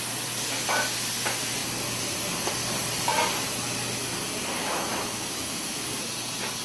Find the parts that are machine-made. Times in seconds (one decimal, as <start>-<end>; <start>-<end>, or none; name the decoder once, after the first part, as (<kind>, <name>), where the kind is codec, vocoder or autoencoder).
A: 4.6-5.8 (autoencoder, DAC-VAE)